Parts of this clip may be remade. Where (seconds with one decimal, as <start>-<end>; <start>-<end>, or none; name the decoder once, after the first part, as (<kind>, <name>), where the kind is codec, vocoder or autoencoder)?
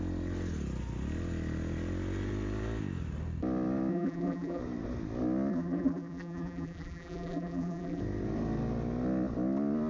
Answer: 3.9-4.6 (vocoder, BigVGAN v2); 5.5-8.0